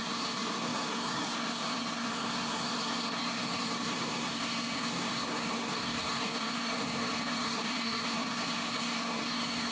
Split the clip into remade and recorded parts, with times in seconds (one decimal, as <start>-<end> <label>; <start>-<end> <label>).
0.0-9.7 remade